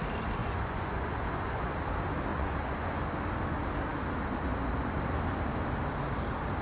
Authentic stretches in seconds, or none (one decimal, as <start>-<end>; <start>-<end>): 0.0-0.4; 1.7-2.3; 3.0-6.6